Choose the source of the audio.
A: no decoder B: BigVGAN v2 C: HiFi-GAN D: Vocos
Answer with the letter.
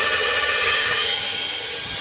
C